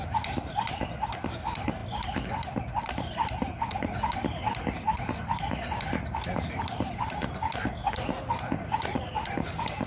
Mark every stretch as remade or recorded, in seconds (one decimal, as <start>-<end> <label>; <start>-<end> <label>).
0.0-9.9 recorded